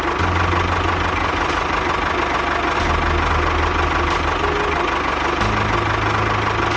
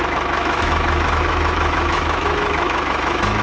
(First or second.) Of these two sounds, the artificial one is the second